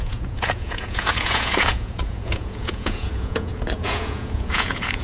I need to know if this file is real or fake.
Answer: fake